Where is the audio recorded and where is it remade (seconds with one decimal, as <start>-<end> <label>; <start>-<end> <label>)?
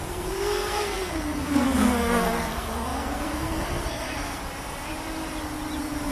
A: 0.0-4.4 remade; 4.4-6.1 recorded